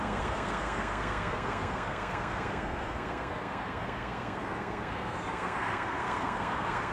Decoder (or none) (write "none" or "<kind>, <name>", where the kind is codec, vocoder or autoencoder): codec, SNAC